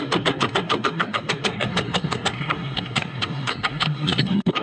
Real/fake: fake